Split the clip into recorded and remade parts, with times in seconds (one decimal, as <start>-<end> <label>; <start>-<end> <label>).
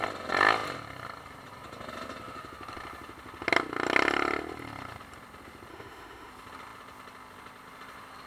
0.0-5.7 recorded; 5.7-6.3 remade; 6.3-8.3 recorded